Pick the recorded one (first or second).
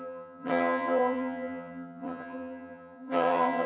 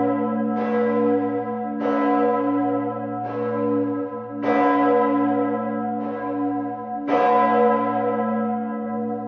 second